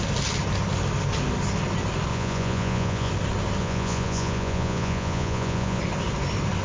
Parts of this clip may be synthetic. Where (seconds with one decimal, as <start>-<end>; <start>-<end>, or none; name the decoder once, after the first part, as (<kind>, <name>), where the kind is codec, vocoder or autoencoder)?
2.1-3.1 (vocoder, Vocos); 3.6-5.8